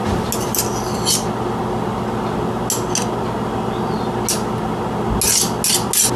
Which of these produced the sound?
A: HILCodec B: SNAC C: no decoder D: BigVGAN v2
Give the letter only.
C